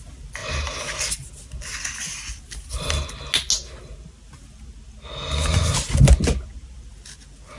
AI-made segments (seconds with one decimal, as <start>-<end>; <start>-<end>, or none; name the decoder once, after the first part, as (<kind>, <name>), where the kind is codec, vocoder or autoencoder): none